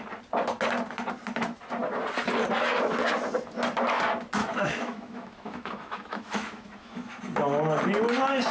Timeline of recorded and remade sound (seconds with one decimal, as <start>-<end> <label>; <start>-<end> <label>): 0.0-4.4 recorded; 4.4-7.2 remade; 7.2-8.5 recorded